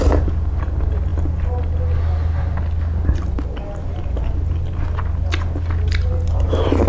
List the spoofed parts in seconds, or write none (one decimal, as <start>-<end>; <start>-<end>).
none